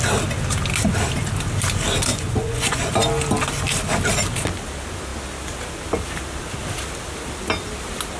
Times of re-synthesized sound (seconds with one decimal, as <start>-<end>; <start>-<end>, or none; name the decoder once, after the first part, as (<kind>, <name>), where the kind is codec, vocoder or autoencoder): 2.1-2.9 (vocoder, Vocos)